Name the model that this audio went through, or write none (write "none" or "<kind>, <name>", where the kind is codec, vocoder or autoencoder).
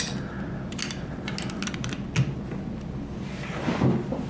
none